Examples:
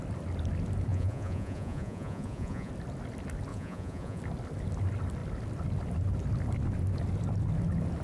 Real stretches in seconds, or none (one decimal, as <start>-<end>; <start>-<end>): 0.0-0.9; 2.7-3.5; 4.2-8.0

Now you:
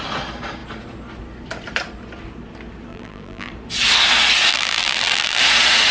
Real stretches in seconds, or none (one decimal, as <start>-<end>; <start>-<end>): 0.0-2.9; 3.5-4.5; 5.4-5.9

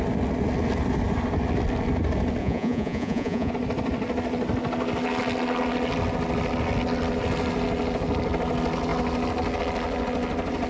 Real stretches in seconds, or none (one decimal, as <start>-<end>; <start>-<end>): 0.0-2.4; 3.5-10.7

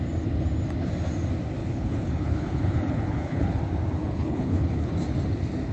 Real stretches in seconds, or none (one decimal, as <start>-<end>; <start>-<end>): 0.0-1.6; 3.6-4.0; 4.9-5.7